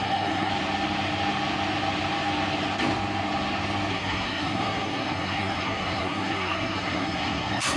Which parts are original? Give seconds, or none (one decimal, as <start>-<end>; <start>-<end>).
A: 0.5-3.9